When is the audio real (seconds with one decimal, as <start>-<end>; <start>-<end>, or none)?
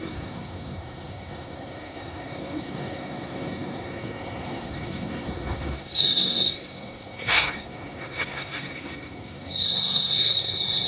none